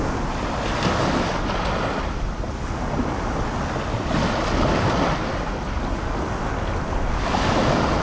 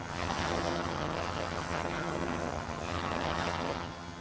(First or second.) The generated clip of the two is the second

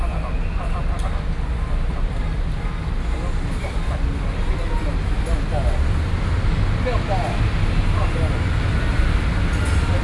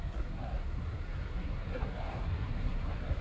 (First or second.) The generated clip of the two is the second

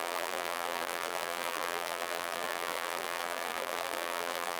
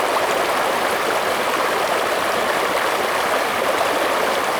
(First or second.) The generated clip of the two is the first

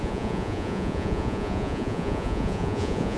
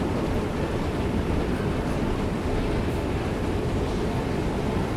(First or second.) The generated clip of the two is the first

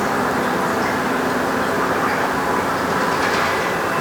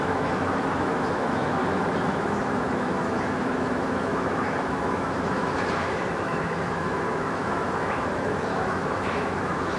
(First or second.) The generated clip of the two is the second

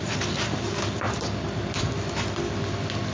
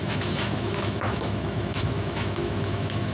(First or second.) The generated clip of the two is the second